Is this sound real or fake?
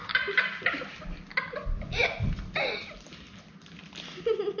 real